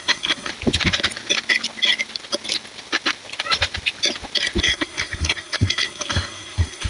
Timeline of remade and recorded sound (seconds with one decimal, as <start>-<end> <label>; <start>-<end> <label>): 0.0-0.5 remade; 0.5-4.6 recorded; 4.6-6.9 remade